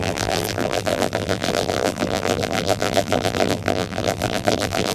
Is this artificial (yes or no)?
yes